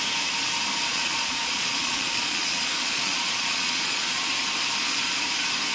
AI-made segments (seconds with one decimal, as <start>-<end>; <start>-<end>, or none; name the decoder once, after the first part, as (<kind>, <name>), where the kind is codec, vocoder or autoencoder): 0.9-4.3 (vocoder, Vocos)